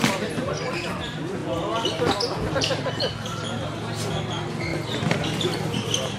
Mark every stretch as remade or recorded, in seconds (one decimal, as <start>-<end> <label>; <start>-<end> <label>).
0.0-4.7 recorded; 4.7-6.2 remade

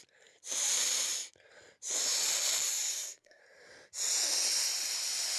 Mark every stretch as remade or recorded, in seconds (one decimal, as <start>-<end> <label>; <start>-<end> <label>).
0.0-2.9 recorded; 2.9-3.4 remade; 3.4-5.4 recorded